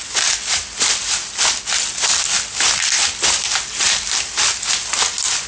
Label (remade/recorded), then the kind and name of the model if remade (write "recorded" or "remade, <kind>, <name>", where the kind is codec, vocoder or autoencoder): recorded